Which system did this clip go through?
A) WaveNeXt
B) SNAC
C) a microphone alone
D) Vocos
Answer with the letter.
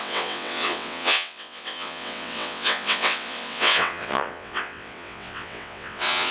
A